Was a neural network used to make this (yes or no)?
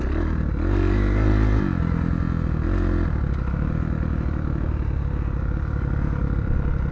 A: no